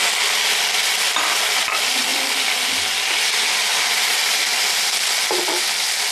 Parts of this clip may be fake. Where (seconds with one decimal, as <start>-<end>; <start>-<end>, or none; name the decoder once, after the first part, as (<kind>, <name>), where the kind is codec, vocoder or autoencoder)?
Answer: none